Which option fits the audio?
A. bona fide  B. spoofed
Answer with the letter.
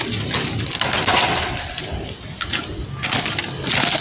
A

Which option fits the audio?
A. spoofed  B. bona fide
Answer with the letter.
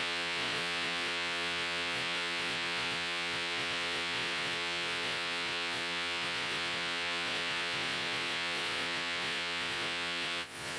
A